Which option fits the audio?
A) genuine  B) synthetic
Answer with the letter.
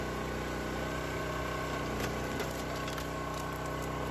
A